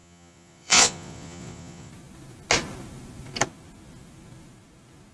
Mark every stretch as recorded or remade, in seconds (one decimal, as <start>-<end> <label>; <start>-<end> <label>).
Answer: 0.0-1.9 remade; 1.9-5.1 recorded